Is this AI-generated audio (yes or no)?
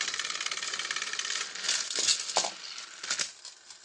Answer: no